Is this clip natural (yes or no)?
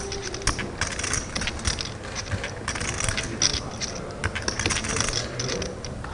yes